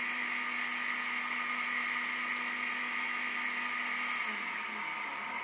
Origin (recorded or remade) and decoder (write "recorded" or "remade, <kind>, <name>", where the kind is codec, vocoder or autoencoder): recorded